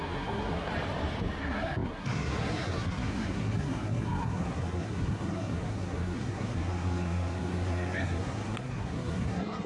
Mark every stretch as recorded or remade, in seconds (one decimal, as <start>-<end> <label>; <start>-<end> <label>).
0.0-0.7 remade; 0.7-1.4 recorded; 1.4-9.7 remade